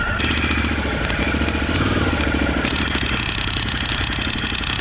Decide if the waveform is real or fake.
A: real